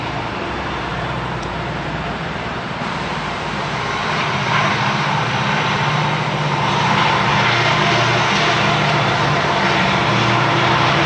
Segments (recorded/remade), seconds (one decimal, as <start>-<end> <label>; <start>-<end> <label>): 0.0-7.3 remade; 7.3-8.5 recorded; 8.5-11.1 remade